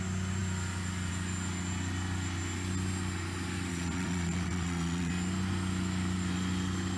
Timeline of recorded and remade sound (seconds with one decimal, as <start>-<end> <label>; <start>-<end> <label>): 0.0-3.7 recorded; 3.7-5.1 remade; 5.1-7.0 recorded